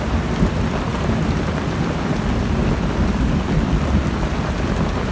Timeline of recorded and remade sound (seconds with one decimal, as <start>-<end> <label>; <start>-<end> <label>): 0.0-5.1 recorded